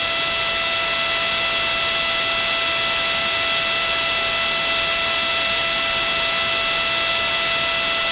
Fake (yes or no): no